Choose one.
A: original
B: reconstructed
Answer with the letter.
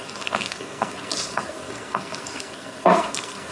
B